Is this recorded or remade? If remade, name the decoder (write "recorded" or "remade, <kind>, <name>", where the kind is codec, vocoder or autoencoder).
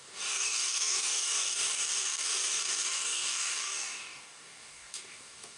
remade, codec, DAC